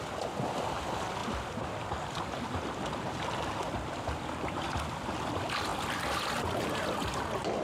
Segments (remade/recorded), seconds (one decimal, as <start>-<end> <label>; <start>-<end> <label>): 0.0-7.6 recorded